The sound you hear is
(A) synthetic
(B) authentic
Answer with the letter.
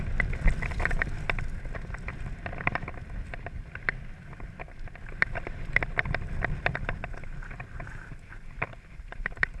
A